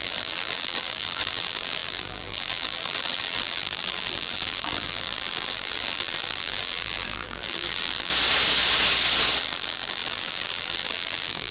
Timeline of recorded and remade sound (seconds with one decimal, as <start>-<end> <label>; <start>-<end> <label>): 0.0-8.1 remade; 8.1-9.4 recorded; 9.4-11.5 remade